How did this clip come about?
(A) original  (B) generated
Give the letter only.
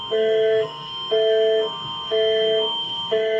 B